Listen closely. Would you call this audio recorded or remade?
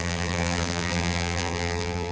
remade